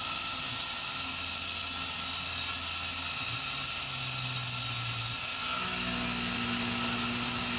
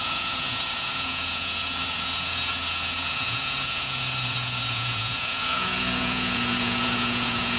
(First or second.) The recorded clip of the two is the first